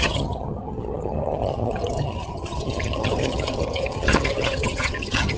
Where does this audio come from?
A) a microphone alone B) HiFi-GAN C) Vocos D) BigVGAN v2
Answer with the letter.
B